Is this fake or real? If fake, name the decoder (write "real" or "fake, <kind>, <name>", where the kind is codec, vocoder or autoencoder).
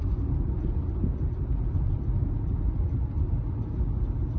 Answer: real